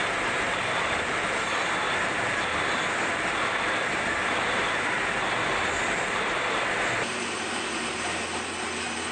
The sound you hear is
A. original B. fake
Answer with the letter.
A